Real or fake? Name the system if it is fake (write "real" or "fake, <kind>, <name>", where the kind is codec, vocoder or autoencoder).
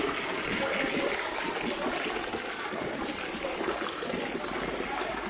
real